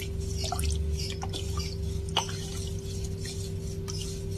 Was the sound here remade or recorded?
recorded